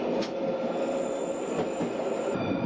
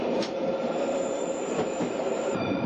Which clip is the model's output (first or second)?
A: second